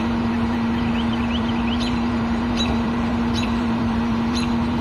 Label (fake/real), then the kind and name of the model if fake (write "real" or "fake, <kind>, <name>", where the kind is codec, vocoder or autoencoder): fake, vocoder, BigVGAN v2